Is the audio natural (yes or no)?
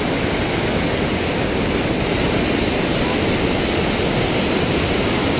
yes